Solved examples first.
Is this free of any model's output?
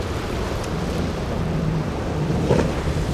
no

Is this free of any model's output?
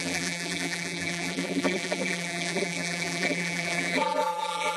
no